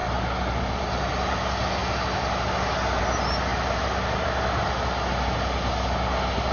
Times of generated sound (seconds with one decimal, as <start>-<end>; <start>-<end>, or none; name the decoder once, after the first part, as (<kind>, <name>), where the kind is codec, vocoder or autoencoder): none